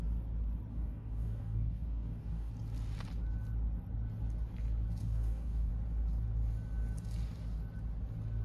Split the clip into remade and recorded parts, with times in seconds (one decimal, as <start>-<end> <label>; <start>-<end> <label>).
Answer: 0.0-0.7 recorded; 0.7-2.5 remade; 2.5-5.0 recorded; 5.0-5.7 remade; 5.7-8.4 recorded